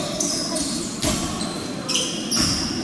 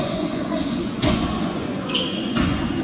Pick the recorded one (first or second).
first